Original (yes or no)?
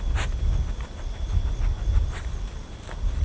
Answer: yes